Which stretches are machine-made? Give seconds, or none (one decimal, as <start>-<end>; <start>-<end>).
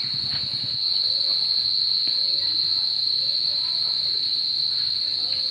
2.9-5.0